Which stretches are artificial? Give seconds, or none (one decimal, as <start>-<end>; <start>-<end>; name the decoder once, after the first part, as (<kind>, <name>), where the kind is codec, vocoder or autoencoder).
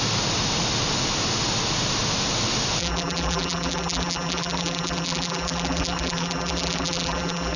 2.8-7.6 (vocoder, BigVGAN v2)